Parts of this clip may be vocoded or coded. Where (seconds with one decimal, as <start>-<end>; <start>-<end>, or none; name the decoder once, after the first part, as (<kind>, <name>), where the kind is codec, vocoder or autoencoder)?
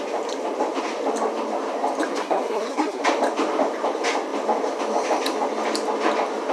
2.1-3.0 (codec, SNAC)